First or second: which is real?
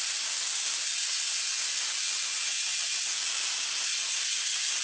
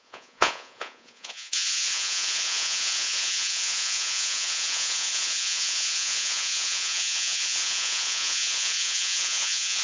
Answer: first